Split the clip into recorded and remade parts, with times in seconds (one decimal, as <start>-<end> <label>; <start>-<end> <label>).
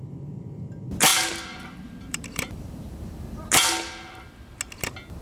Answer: 0.0-1.1 recorded; 1.1-3.0 remade; 3.0-5.2 recorded